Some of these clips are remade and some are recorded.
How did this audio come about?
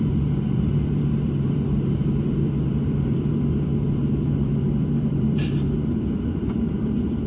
remade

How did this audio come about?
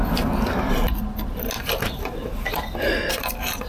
remade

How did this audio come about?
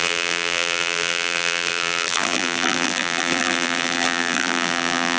remade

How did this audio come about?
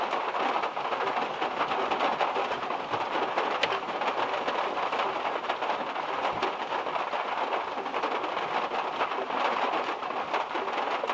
recorded